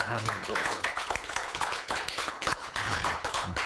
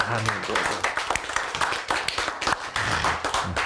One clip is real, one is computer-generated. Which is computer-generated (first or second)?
first